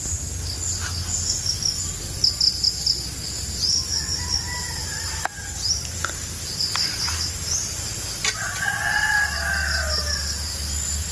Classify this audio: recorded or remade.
recorded